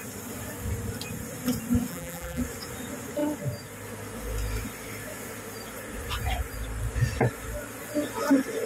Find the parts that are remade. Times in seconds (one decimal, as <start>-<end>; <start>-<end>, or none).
1.9-2.4